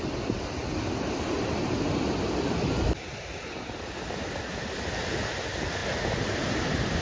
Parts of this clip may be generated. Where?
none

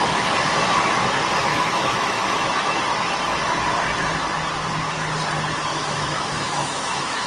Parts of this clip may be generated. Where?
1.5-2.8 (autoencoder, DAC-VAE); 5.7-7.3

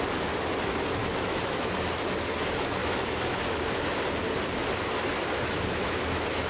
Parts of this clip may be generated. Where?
1.0-1.7 (autoencoder, DAC-VAE); 2.8-3.4; 5.7-6.5

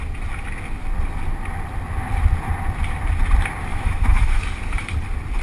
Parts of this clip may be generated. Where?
3.7-4.4 (autoencoder, DAC-VAE)

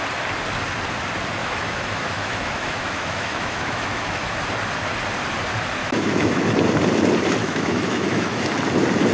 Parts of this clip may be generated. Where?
1.4-4.4 (autoencoder, DAC-VAE); 5.8-6.5; 7.4-8.5